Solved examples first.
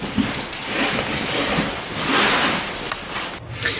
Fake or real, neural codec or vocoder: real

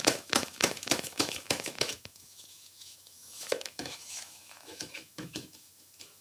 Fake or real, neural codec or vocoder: fake, autoencoder, DAC-VAE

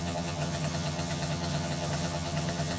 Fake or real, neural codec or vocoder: fake, vocoder, HiFi-GAN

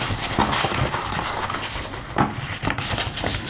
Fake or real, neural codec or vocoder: real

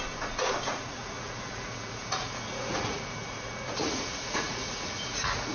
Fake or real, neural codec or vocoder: fake, vocoder, Vocos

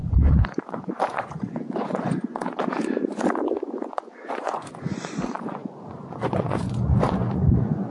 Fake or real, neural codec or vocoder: fake, vocoder, Vocos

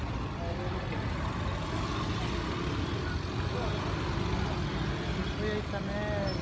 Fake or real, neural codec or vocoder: real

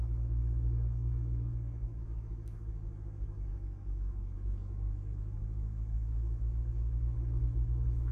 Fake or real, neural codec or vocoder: fake, autoencoder, DAC-VAE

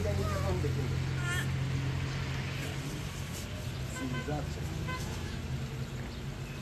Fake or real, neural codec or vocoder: real